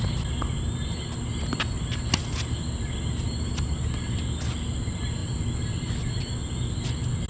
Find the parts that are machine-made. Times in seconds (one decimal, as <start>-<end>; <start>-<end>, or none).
none